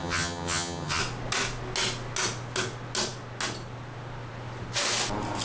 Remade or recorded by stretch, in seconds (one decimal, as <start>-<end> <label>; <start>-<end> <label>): 0.0-1.0 remade; 1.0-5.4 recorded

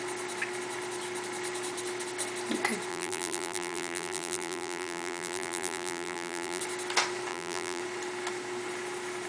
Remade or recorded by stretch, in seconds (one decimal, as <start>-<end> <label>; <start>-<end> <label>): 0.0-2.9 recorded; 2.9-6.6 remade; 6.6-7.3 recorded; 7.3-7.8 remade; 7.8-9.3 recorded

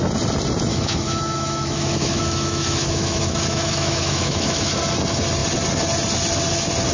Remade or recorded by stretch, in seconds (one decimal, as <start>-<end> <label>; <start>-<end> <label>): 0.0-0.7 recorded; 0.7-4.8 remade; 4.8-6.9 recorded

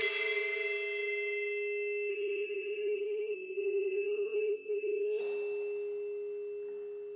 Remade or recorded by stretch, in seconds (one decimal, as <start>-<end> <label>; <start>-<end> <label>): 0.0-2.1 recorded; 2.1-5.2 remade; 5.2-7.2 recorded

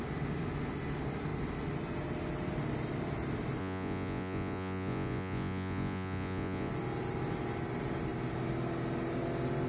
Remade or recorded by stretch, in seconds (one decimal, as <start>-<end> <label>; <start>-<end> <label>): 0.0-3.6 recorded; 3.6-6.7 remade; 6.7-9.7 recorded

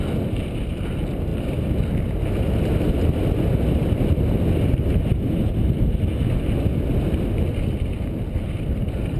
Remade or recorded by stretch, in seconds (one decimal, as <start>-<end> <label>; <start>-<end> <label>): 0.0-9.2 recorded

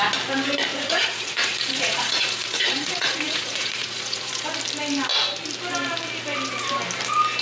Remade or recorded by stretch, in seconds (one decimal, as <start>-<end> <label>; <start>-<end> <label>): 0.0-0.7 recorded; 0.7-4.5 remade; 4.5-7.4 recorded